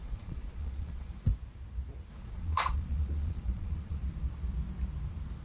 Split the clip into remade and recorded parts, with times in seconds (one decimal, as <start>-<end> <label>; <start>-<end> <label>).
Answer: 0.0-1.3 remade; 1.3-2.1 recorded; 2.1-4.0 remade; 4.0-5.4 recorded